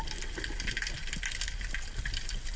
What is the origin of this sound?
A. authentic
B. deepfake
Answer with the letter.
A